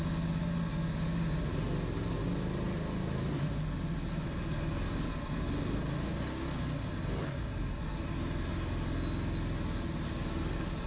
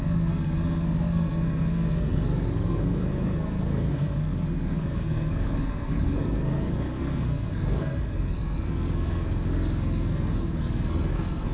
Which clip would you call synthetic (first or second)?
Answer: second